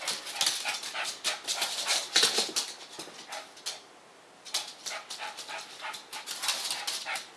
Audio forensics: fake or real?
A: real